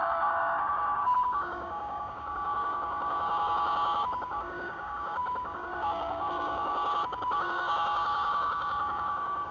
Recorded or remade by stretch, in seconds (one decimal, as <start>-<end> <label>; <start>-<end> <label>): 0.0-9.5 remade